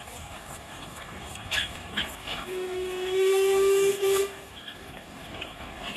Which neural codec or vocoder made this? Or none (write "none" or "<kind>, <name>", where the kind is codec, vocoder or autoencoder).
codec, DAC